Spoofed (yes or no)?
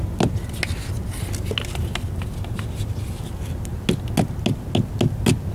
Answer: no